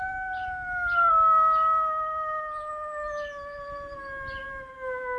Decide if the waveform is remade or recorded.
recorded